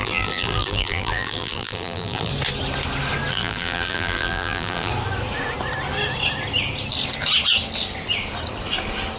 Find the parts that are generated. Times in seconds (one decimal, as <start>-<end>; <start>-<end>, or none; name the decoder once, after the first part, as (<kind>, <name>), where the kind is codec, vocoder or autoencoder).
0.0-2.3 (vocoder, BigVGAN v2); 3.3-4.9

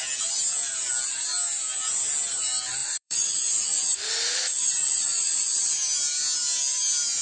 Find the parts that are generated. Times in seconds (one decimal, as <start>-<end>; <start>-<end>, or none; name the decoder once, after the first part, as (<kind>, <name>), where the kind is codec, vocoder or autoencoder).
2.8-5.7 (vocoder, Vocos)

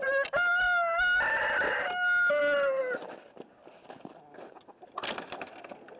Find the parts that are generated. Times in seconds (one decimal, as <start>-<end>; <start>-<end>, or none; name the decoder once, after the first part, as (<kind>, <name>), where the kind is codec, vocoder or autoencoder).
none